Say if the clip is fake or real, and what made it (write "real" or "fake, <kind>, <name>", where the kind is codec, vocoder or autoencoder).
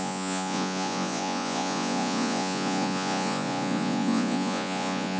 fake, vocoder, Vocos